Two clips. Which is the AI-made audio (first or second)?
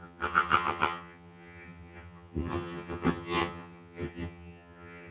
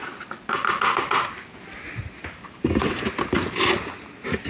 first